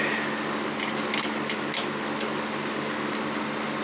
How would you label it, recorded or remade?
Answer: recorded